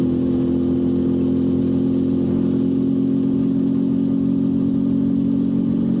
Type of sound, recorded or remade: recorded